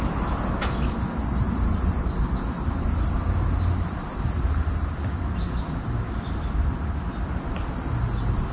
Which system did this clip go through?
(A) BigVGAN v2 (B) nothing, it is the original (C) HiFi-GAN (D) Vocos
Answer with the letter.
B